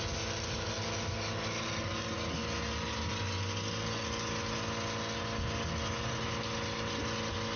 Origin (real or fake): real